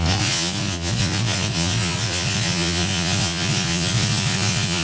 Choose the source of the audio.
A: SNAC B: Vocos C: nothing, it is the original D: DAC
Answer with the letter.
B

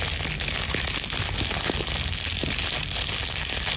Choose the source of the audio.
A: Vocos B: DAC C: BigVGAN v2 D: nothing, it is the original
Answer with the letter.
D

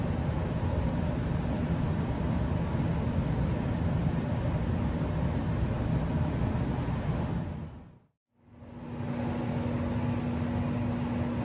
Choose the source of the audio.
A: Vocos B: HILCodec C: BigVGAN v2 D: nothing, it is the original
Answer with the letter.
D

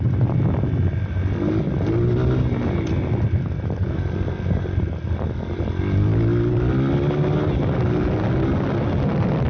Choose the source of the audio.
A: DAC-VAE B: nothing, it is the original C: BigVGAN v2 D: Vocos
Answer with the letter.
B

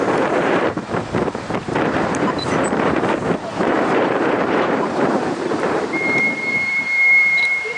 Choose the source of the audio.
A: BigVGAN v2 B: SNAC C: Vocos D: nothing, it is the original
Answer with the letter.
A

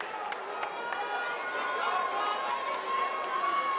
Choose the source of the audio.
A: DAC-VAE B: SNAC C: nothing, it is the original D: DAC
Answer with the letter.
C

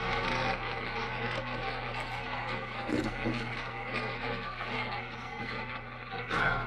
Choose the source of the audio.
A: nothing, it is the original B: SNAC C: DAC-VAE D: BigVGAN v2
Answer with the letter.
B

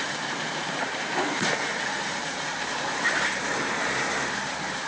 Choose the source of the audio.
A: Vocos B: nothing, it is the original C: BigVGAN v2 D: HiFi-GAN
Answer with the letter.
C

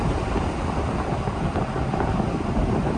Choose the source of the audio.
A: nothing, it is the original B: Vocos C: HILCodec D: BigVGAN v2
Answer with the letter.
D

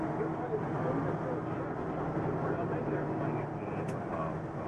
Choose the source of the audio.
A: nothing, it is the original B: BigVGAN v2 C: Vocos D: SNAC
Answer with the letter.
A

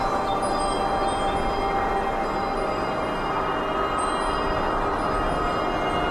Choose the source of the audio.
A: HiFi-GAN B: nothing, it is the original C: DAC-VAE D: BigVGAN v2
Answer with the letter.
B